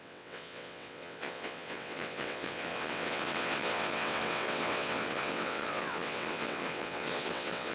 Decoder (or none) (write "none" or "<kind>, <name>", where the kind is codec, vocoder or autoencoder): vocoder, WaveNeXt